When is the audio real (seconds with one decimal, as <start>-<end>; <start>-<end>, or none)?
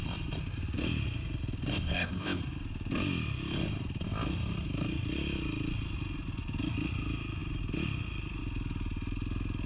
0.0-1.7; 2.4-9.7